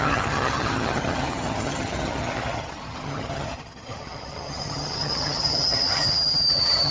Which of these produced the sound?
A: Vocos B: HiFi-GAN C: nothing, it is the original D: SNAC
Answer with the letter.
B